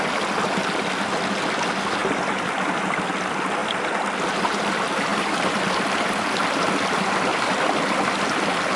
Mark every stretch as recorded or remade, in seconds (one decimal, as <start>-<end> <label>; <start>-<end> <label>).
0.0-2.0 recorded; 2.0-3.0 remade; 3.0-5.1 recorded; 5.1-5.9 remade; 5.9-7.3 recorded; 7.3-8.4 remade; 8.4-8.8 recorded